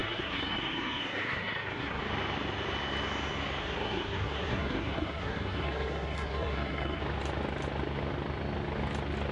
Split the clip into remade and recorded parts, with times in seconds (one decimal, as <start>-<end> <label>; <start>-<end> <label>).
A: 0.0-2.0 remade; 2.0-3.6 recorded; 3.6-7.0 remade; 7.0-9.3 recorded